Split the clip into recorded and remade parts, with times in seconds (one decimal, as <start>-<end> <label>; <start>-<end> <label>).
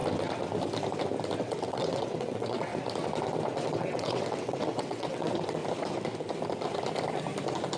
0.0-1.4 recorded; 1.4-2.7 remade; 2.7-3.8 recorded; 3.8-5.6 remade; 5.6-7.8 recorded